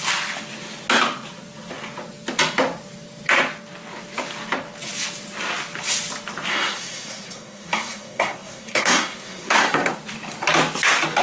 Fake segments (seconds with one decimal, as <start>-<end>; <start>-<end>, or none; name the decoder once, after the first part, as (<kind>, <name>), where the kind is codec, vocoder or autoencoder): 6.5-9.9 (codec, SNAC)